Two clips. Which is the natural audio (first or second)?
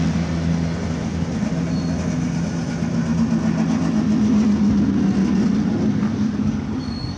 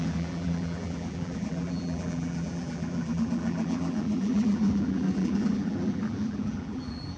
first